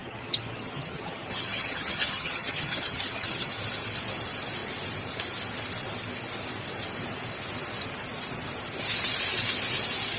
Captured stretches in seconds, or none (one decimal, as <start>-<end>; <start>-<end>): 3.5-10.2